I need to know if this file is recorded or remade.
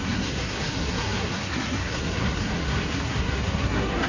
remade